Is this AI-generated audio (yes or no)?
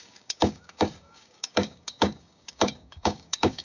yes